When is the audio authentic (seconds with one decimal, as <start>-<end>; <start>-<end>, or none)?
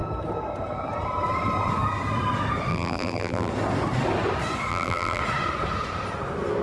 0.0-2.7; 3.5-4.7; 5.2-6.6